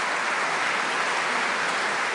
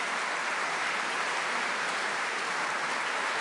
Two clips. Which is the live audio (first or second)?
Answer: first